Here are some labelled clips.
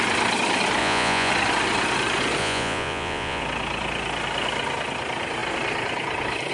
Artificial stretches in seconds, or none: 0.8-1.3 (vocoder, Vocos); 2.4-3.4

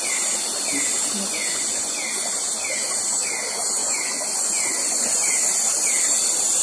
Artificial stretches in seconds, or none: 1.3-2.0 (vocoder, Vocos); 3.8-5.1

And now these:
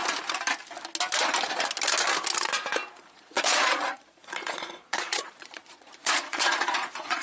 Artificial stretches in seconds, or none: 3.1-7.2 (vocoder, Vocos)

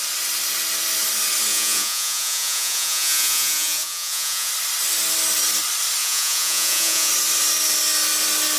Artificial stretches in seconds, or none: 1.5-4.5 (vocoder, Vocos); 6.0-7.1